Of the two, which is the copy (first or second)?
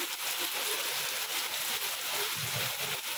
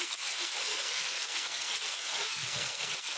second